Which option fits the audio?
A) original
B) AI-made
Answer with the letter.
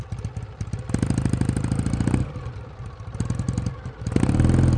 B